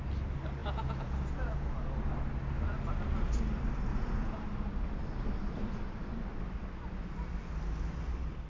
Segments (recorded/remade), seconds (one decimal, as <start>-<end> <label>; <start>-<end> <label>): 0.0-0.6 recorded; 0.6-2.1 remade; 2.1-3.9 recorded; 3.9-4.4 remade; 4.4-8.5 recorded